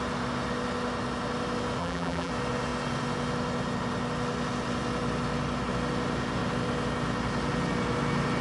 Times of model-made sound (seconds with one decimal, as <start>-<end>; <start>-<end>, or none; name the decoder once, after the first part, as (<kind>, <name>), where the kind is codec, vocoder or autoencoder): 1.8-2.3 (vocoder, BigVGAN v2)